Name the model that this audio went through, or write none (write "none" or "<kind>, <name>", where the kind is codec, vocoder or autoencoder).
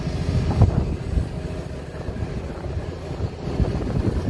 none